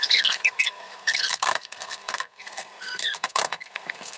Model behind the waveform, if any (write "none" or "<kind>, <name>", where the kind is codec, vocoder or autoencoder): codec, SNAC